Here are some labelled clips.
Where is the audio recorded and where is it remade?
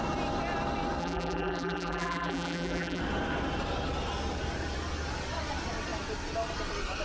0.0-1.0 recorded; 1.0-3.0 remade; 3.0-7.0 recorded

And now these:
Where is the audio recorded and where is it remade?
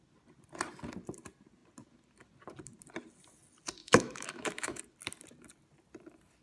0.0-3.8 recorded; 3.8-4.8 remade; 4.8-6.4 recorded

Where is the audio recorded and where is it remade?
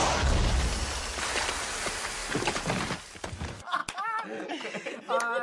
0.0-5.4 recorded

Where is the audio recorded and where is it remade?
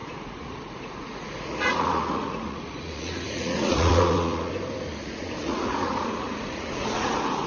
0.0-4.5 remade; 4.5-5.0 recorded; 5.0-7.5 remade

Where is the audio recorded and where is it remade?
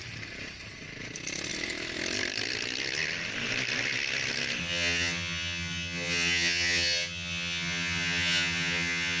0.0-4.6 recorded; 4.6-9.2 remade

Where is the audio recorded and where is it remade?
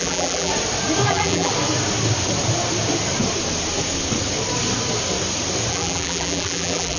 0.0-0.5 remade; 0.5-1.1 recorded; 1.1-1.5 remade; 1.5-5.7 recorded; 5.7-7.0 remade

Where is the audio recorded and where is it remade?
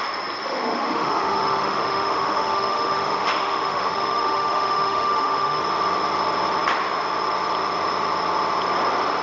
0.0-0.4 recorded; 0.4-5.6 remade; 5.6-9.2 recorded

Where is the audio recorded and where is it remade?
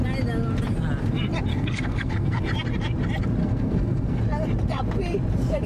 0.0-1.5 recorded; 1.5-2.4 remade; 2.4-3.4 recorded; 3.4-4.2 remade; 4.2-5.7 recorded